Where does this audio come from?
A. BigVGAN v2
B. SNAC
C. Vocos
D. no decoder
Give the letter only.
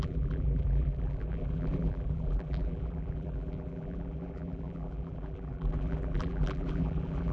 A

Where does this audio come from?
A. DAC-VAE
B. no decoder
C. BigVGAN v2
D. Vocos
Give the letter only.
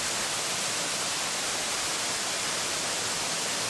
B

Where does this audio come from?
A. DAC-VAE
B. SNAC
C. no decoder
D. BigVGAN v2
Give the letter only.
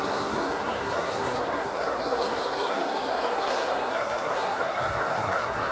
B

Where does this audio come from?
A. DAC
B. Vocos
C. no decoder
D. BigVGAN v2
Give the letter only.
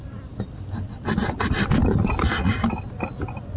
C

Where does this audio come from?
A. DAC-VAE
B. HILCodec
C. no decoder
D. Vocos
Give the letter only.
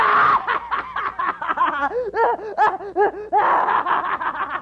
C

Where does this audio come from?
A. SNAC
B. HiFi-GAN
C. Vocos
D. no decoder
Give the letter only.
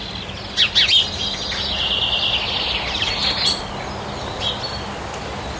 D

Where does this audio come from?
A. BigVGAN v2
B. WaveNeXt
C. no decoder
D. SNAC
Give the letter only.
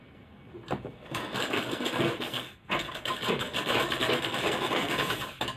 D